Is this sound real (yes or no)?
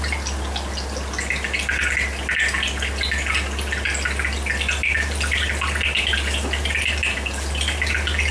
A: yes